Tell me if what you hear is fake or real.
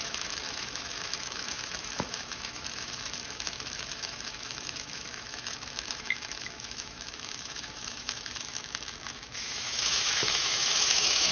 fake